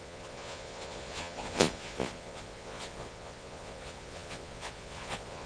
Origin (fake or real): fake